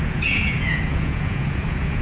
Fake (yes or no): yes